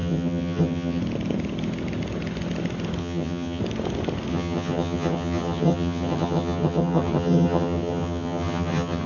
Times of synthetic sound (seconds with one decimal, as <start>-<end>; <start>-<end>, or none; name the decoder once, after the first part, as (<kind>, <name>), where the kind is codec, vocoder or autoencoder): 0.0-1.0 (vocoder, HiFi-GAN); 3.0-3.6; 4.3-9.1